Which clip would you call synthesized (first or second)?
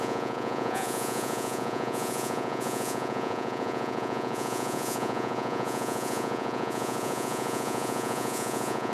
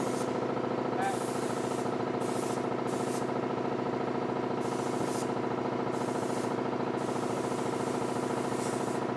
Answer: first